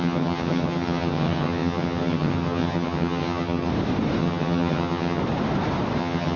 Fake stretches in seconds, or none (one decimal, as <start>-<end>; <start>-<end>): 0.0-3.7; 4.2-5.2; 6.0-6.4